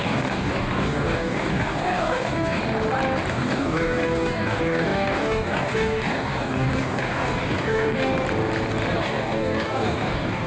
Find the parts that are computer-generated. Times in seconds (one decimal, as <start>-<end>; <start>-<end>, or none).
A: 0.0-2.6; 3.3-8.1; 9.0-10.5